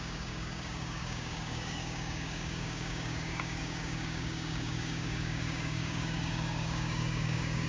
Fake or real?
fake